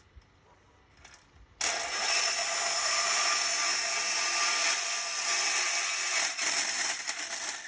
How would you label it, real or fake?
real